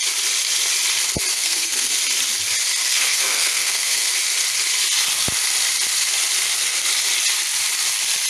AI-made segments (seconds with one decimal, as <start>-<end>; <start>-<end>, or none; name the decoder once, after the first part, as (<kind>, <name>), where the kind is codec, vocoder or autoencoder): 1.3-1.9 (codec, SNAC); 2.8-4.1